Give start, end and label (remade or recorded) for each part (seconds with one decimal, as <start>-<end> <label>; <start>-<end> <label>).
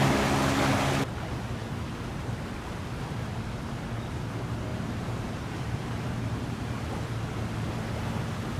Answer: 0.0-4.7 recorded; 4.7-6.8 remade; 6.8-8.6 recorded